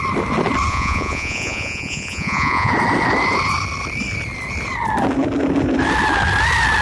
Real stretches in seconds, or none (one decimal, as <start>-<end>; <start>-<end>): 0.0-0.7; 2.7-6.8